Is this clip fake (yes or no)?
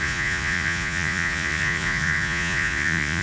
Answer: yes